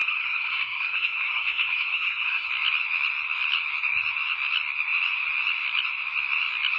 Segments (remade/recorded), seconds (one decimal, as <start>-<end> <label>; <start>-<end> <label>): 0.0-2.5 remade; 2.5-6.8 recorded